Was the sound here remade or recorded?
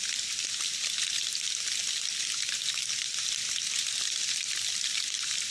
recorded